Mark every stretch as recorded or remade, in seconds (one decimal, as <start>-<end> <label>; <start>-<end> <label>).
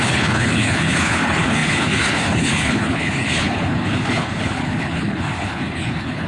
0.0-6.3 remade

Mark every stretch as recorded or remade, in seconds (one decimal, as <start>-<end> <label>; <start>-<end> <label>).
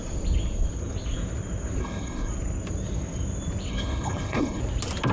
0.0-1.8 recorded; 1.8-2.3 remade; 2.3-3.7 recorded; 3.7-4.6 remade; 4.6-5.1 recorded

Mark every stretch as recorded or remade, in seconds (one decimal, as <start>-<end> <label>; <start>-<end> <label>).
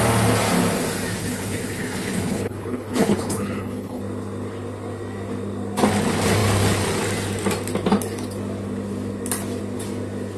0.0-1.2 recorded; 1.2-4.0 remade; 4.0-10.4 recorded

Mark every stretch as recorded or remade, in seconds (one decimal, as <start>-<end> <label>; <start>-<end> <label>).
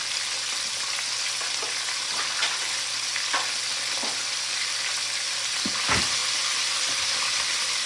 0.0-7.9 recorded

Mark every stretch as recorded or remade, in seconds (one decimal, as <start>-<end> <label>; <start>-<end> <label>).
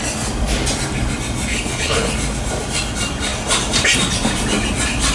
0.0-1.5 recorded; 1.5-2.1 remade; 2.1-5.1 recorded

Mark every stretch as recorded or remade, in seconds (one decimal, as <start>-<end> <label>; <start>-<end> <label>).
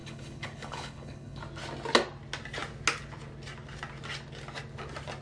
0.0-1.4 remade; 1.4-5.2 recorded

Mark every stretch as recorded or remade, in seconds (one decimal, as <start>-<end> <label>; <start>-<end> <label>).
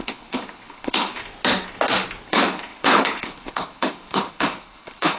0.0-1.2 remade; 1.2-2.3 recorded; 2.3-5.2 remade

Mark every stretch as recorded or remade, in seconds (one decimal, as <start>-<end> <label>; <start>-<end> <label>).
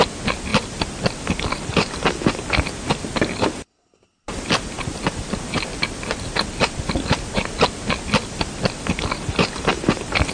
0.0-10.3 recorded